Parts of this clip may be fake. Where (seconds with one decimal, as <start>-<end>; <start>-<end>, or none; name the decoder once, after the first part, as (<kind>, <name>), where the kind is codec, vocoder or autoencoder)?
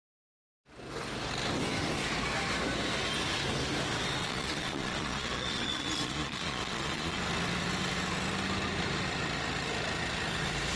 4.2-7.2 (vocoder, Vocos)